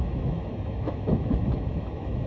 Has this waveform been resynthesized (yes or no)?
yes